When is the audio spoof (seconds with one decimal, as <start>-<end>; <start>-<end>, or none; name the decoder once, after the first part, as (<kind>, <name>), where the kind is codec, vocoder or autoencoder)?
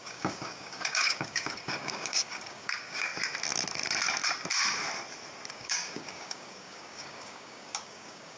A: 0.0-3.1 (codec, DAC); 5.5-8.4